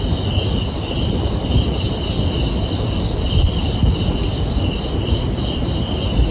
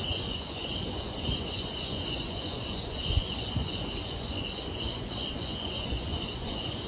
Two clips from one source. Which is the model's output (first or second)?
second